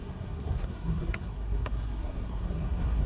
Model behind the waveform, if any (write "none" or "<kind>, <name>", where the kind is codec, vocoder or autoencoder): codec, SNAC